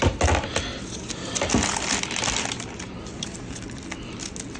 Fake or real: real